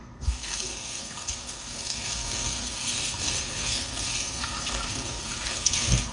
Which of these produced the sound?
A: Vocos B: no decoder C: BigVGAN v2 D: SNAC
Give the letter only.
D